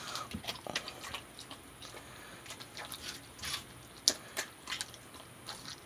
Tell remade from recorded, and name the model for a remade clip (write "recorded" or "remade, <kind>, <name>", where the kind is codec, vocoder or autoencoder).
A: recorded